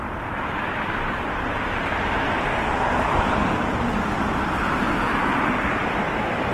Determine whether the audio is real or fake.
fake